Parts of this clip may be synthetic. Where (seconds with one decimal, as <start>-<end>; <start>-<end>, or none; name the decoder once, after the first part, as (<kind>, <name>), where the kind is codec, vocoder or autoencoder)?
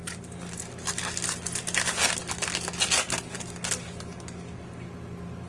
none